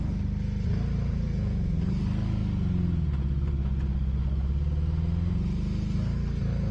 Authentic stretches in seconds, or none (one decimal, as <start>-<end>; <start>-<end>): 0.0-1.1; 1.9-6.7